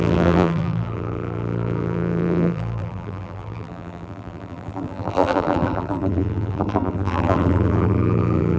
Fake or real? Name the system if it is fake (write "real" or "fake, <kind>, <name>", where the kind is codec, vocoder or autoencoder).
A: fake, vocoder, BigVGAN v2